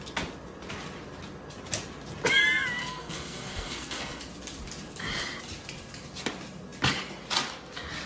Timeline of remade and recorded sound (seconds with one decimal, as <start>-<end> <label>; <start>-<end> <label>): 0.0-2.8 recorded; 2.8-4.2 remade; 4.2-8.1 recorded